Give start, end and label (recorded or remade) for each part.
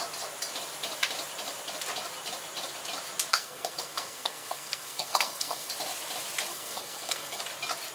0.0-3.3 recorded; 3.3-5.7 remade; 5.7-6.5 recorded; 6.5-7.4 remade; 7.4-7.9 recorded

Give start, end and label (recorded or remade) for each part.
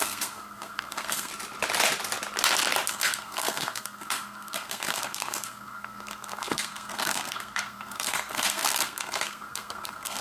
0.0-1.3 remade; 1.3-2.9 recorded; 2.9-10.2 remade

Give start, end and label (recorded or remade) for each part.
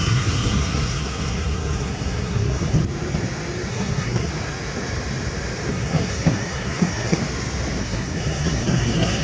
0.0-2.8 remade; 2.8-3.7 recorded; 3.7-4.3 remade; 4.3-5.7 recorded; 5.7-7.2 remade; 7.2-7.8 recorded; 7.8-9.2 remade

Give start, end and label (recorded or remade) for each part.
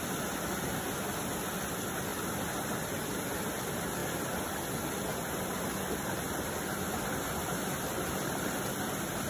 0.0-9.3 recorded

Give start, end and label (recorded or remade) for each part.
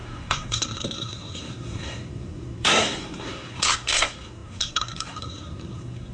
0.0-6.1 remade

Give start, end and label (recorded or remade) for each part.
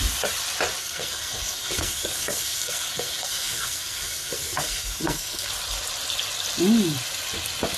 0.0-0.8 recorded; 0.8-5.5 remade; 5.5-7.8 recorded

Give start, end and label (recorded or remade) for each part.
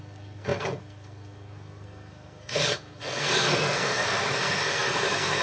0.0-5.4 remade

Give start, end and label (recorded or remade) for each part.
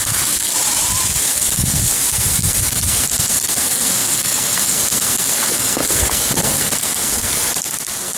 0.0-0.5 remade; 0.5-1.2 recorded; 1.2-8.2 remade